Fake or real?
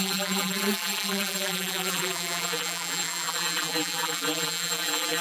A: fake